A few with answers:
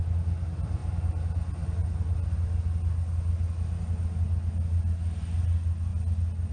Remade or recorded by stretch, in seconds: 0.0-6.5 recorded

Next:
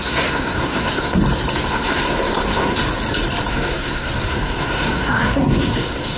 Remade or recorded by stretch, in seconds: 0.0-1.2 remade; 1.2-1.7 recorded; 1.7-2.8 remade; 2.8-3.5 recorded; 3.5-6.2 remade

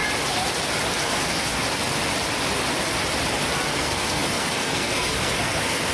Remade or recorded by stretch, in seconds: 0.0-1.0 recorded; 1.0-1.5 remade; 1.5-3.7 recorded; 3.7-5.9 remade

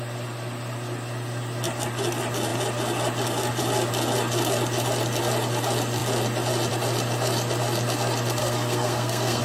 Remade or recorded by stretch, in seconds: 0.0-8.4 recorded; 8.4-9.4 remade

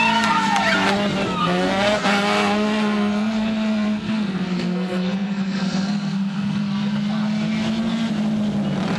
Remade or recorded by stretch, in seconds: 0.0-1.4 recorded; 1.4-6.6 remade; 6.6-9.0 recorded

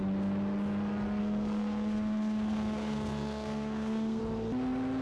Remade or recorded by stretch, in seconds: 0.0-1.2 recorded; 1.2-4.2 remade; 4.2-5.0 recorded

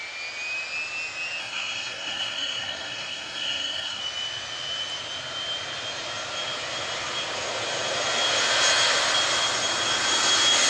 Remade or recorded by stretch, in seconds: 0.0-1.4 recorded; 1.4-4.0 remade; 4.0-10.7 recorded

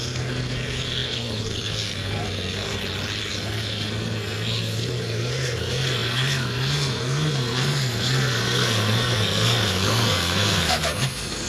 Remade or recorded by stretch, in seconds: 0.0-2.8 remade; 2.8-3.3 recorded; 3.3-11.5 remade